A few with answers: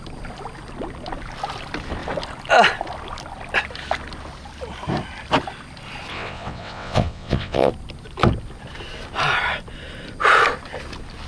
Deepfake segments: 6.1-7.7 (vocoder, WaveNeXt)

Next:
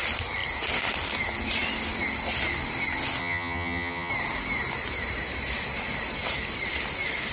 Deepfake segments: 3.2-4.1 (vocoder, HiFi-GAN)